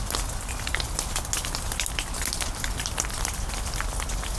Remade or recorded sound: recorded